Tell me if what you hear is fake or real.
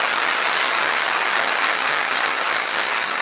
fake